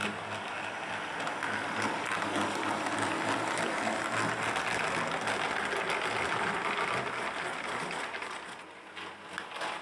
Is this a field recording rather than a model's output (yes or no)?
yes